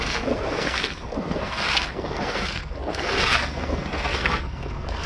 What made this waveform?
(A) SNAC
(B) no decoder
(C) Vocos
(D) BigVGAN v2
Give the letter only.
A